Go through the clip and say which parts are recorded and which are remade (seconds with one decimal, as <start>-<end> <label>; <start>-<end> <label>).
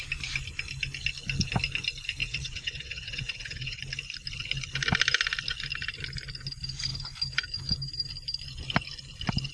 0.0-2.2 recorded; 2.2-3.8 remade; 3.8-9.5 recorded